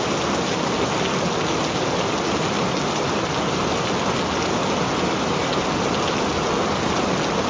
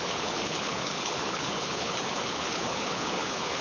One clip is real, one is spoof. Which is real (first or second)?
first